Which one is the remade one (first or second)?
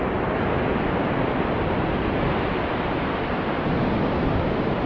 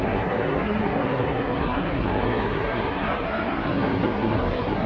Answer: second